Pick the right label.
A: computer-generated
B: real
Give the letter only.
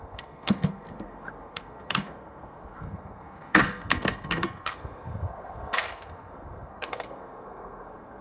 A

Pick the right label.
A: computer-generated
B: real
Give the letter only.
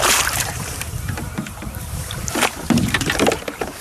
A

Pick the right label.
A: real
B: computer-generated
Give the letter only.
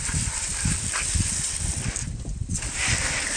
A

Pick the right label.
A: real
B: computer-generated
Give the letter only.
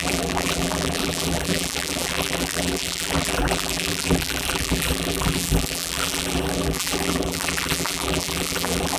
B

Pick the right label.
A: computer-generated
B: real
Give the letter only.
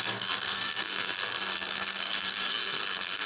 A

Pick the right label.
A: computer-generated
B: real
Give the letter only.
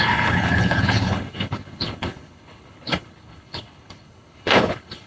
A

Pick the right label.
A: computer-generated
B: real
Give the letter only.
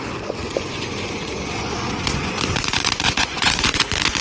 A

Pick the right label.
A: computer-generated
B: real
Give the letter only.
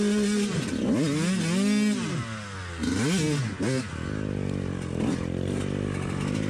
B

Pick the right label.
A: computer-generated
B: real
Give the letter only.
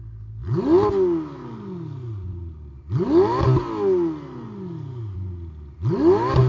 B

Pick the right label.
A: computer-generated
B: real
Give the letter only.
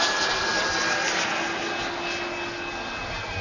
B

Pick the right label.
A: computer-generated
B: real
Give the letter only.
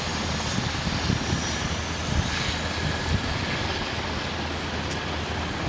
B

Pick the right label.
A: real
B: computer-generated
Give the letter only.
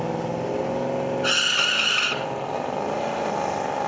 A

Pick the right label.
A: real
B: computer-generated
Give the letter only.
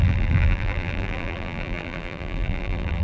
B